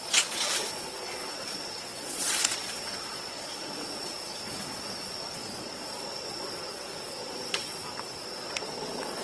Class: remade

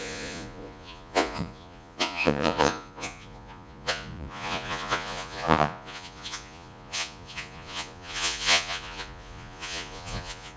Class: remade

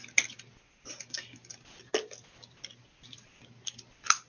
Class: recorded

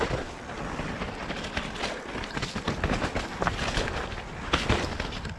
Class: recorded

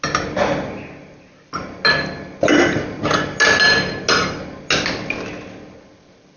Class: recorded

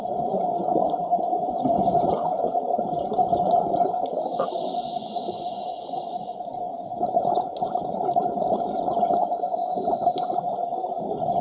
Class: remade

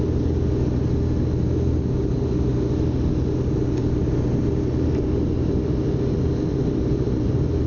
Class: recorded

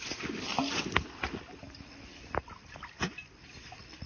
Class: recorded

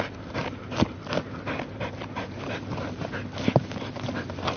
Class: recorded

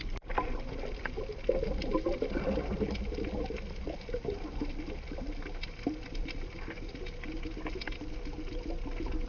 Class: recorded